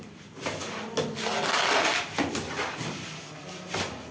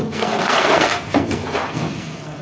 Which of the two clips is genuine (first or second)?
first